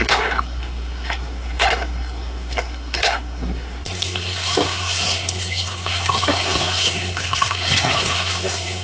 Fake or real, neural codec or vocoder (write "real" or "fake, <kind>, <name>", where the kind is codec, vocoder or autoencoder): fake, codec, SNAC